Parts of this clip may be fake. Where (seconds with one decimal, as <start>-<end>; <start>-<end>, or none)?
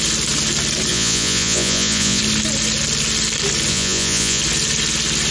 0.9-2.2; 3.7-4.4